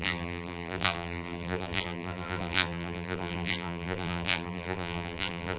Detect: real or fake fake